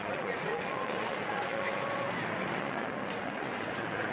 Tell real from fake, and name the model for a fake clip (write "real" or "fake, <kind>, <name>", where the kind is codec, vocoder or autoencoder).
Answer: fake, vocoder, Vocos